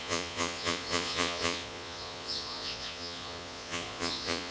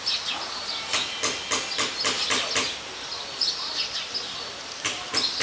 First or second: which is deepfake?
first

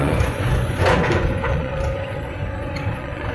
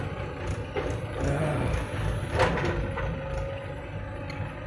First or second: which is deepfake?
first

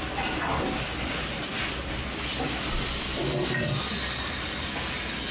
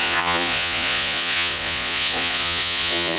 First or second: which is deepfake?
second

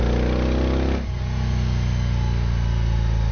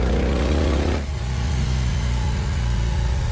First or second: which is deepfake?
second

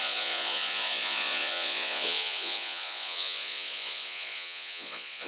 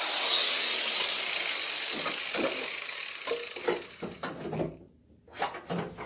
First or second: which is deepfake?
first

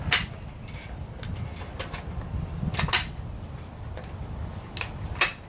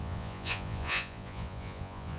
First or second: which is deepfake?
second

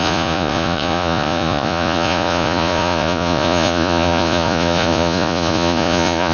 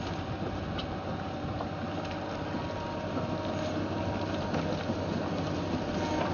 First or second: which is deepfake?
first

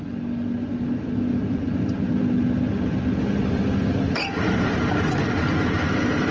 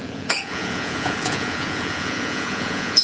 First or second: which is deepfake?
second